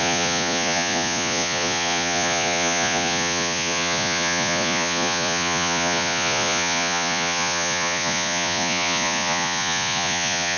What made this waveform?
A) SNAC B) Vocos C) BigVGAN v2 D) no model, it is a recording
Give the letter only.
B